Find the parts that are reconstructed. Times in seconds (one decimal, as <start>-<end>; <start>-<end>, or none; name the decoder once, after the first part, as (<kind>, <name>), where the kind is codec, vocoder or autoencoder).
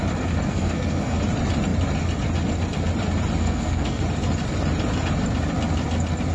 0.5-1.2 (codec, SNAC); 3.4-4.0